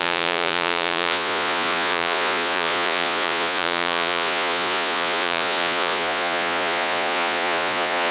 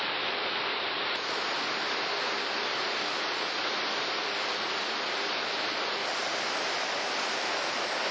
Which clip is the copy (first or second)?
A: first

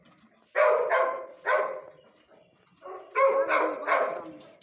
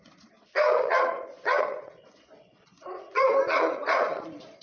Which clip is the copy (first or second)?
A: second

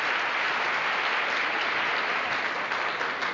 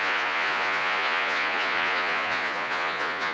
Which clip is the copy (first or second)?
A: second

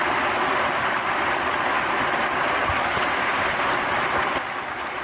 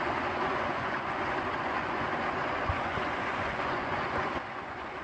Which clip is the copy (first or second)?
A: second